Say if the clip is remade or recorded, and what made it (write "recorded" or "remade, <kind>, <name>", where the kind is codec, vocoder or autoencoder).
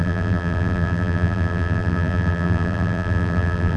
remade, vocoder, BigVGAN v2